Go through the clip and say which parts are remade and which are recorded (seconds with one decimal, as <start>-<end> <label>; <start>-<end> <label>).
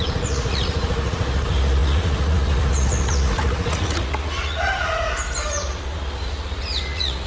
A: 0.0-4.9 remade; 4.9-5.5 recorded; 5.5-7.3 remade